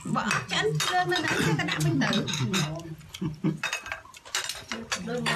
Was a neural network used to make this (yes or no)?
no